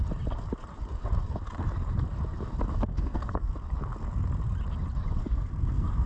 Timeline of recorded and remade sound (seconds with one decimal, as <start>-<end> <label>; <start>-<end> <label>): 0.0-2.9 recorded; 2.9-3.5 remade; 3.5-5.2 recorded; 5.2-6.1 remade